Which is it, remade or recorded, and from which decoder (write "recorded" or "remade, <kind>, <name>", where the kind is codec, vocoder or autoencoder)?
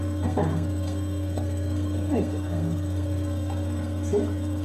remade, codec, SNAC